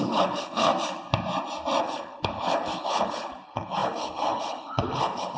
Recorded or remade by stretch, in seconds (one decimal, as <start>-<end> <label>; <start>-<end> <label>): 0.0-0.7 remade; 0.7-1.8 recorded; 1.8-5.4 remade